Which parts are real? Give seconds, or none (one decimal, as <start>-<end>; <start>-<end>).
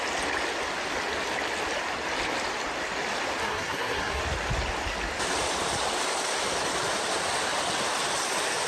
0.0-3.4; 4.2-8.7